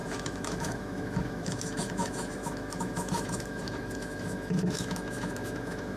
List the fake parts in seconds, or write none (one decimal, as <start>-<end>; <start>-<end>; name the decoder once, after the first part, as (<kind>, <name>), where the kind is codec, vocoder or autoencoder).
0.0-6.0 (autoencoder, DAC-VAE)